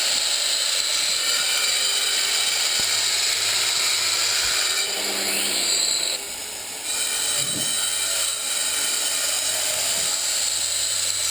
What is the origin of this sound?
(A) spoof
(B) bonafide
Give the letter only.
B